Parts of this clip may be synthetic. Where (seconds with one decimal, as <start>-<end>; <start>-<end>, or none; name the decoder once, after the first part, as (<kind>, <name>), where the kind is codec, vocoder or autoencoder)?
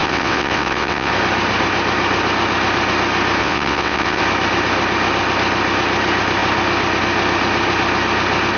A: 0.0-1.1 (vocoder, WaveNeXt); 3.4-4.2